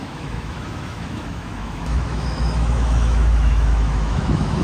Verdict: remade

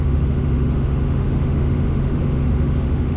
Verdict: remade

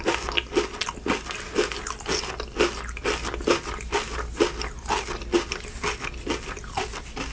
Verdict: recorded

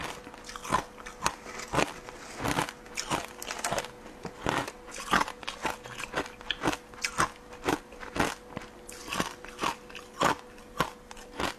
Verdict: recorded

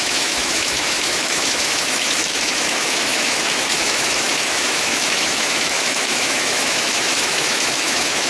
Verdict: remade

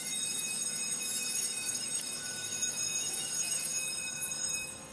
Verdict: remade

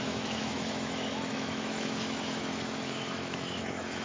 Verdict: remade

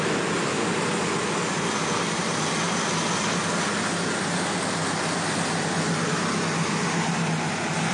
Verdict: recorded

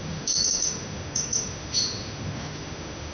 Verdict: remade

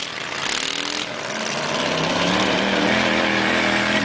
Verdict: recorded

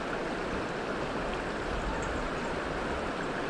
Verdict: recorded